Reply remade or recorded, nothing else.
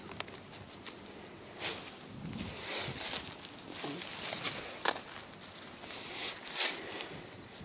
recorded